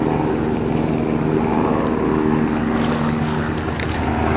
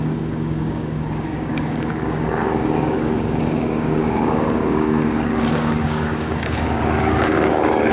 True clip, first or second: first